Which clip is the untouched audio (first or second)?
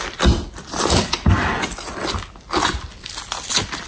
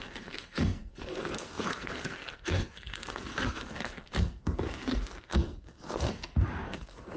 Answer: first